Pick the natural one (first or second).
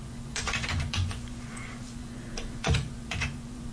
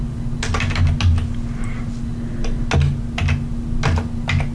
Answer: second